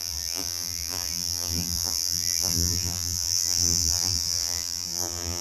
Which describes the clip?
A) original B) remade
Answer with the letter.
B